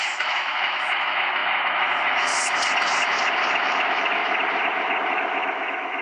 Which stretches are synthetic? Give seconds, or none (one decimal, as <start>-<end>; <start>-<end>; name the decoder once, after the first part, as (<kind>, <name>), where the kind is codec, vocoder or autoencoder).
0.0-2.3 (autoencoder, DAC-VAE); 3.5-4.2; 5.1-6.0